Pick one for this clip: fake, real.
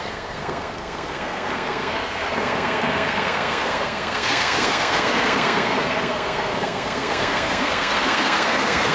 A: fake